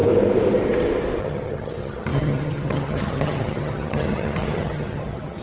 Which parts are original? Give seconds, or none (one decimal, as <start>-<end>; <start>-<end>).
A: 0.0-1.2